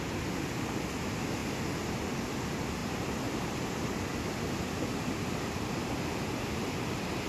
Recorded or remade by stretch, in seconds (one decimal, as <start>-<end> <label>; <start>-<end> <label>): 0.0-7.3 recorded